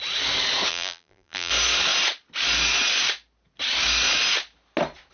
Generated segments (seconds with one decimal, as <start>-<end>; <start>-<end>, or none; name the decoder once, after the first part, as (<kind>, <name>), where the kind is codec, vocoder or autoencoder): 0.7-1.5 (vocoder, BigVGAN v2)

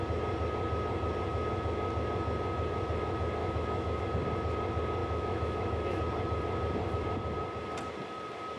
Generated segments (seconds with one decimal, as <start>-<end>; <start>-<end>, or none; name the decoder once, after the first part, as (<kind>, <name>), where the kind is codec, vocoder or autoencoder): 3.4-4.0 (autoencoder, DAC-VAE); 5.0-6.0

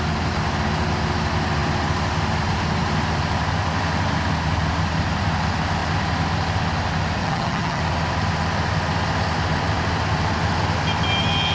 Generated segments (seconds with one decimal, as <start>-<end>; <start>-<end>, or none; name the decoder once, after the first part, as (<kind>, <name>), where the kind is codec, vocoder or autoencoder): 7.2-7.8 (vocoder, HiFi-GAN)

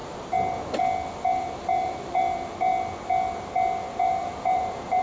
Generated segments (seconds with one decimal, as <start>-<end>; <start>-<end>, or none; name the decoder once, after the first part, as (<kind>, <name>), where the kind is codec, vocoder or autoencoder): 1.3-2.7 (vocoder, BigVGAN v2); 4.0-5.0

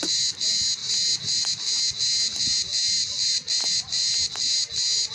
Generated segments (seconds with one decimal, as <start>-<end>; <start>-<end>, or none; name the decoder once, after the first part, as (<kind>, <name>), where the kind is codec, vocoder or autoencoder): none

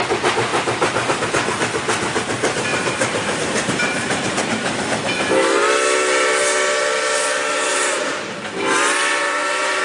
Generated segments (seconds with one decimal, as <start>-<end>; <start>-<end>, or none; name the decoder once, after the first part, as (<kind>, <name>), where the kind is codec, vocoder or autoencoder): 2.7-5.3 (vocoder, BigVGAN v2); 7.7-9.8

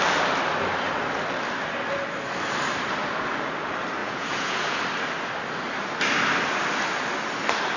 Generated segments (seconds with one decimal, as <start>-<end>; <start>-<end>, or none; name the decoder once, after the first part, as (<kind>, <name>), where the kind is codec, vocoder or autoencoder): 4.0-4.8 (vocoder, Vocos)

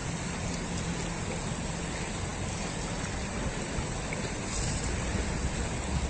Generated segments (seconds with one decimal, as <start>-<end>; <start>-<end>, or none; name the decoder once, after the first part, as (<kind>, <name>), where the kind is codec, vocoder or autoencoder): none